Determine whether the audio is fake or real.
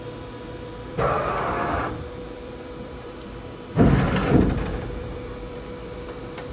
fake